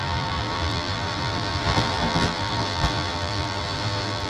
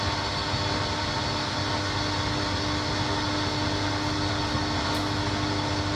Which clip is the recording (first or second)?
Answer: second